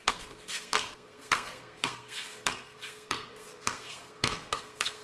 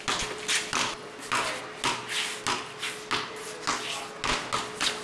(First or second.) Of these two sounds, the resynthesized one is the first